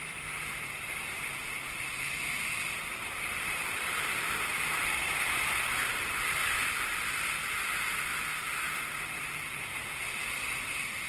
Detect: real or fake fake